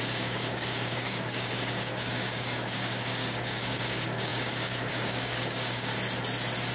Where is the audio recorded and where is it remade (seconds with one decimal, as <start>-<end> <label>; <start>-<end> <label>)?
0.0-5.9 remade; 5.9-6.7 recorded